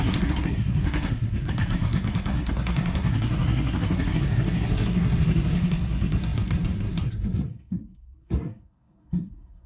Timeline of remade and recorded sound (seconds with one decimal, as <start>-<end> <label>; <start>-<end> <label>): 0.0-9.7 remade